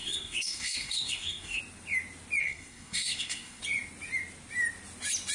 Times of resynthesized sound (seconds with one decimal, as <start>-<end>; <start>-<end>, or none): 0.0-1.6; 2.4-3.6